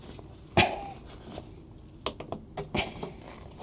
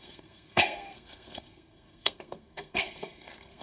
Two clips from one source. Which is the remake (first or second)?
second